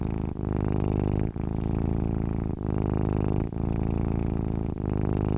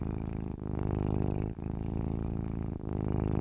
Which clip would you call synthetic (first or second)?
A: second